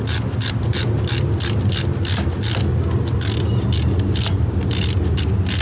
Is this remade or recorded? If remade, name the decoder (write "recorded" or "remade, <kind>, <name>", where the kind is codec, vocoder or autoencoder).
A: recorded